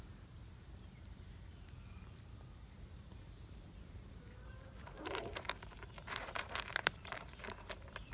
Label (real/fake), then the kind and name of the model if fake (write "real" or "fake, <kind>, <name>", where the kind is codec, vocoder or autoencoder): fake, vocoder, BigVGAN v2